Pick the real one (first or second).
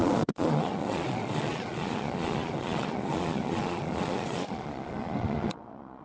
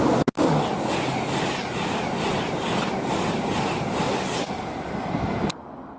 second